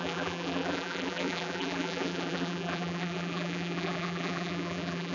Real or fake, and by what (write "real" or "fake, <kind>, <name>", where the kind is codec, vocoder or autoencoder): fake, vocoder, BigVGAN v2